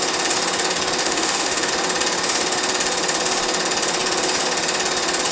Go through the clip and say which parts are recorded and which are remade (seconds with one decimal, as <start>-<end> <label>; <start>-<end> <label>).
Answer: 0.0-1.0 recorded; 1.0-1.7 remade; 1.7-5.3 recorded